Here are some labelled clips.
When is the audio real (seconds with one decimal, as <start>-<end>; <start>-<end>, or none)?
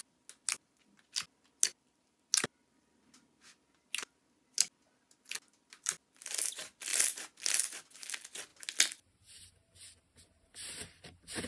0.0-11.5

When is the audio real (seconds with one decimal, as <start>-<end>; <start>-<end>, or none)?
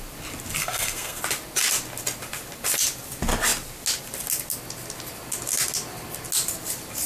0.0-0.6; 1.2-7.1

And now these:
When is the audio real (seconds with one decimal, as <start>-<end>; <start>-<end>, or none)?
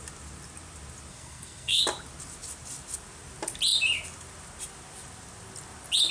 0.0-1.1; 1.8-6.1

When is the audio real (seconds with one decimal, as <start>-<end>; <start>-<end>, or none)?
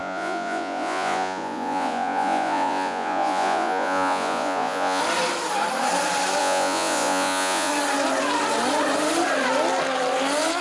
5.0-6.4; 7.7-10.6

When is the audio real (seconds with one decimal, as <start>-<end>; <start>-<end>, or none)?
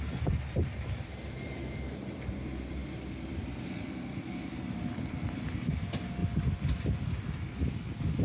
6.2-8.2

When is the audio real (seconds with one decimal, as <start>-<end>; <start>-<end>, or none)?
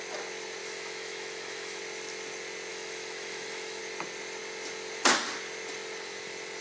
0.0-0.6; 1.8-2.7; 3.8-6.6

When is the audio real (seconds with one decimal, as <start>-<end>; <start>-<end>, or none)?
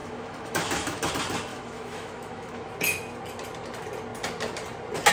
1.1-1.5; 2.7-5.1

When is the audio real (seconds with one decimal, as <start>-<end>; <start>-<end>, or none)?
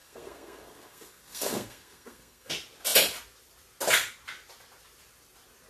2.5-5.7